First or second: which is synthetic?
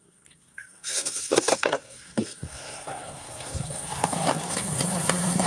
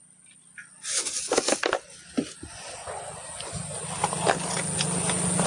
first